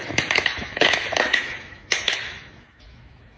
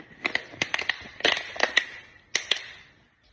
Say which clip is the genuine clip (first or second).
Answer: second